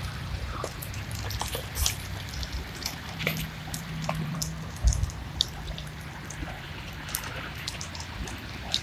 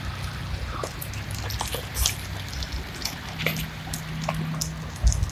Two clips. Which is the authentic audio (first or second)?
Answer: second